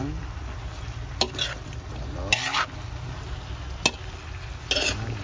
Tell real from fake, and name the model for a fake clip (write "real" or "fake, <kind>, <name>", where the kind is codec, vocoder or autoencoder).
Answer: real